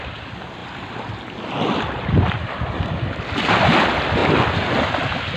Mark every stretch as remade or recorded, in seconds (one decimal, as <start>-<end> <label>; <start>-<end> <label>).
0.0-5.4 recorded